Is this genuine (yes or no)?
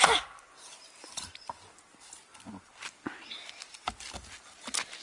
yes